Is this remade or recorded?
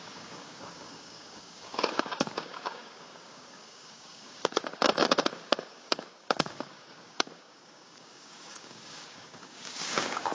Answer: remade